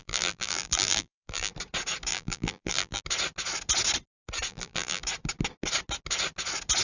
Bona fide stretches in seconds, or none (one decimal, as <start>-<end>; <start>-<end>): 1.5-2.1; 3.0-4.5; 5.0-6.8